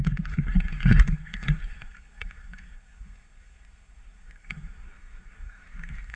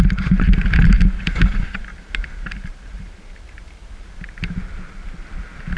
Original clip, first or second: second